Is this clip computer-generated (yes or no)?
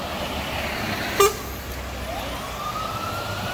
no